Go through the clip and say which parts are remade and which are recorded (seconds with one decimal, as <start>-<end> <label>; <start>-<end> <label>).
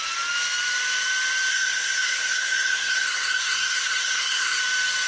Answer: 0.0-1.5 recorded; 1.5-4.6 remade; 4.6-5.1 recorded